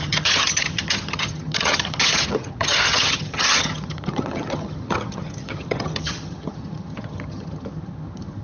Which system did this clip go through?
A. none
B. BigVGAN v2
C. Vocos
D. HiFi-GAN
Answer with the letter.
D